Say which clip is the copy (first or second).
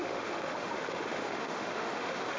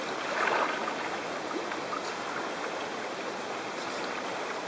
first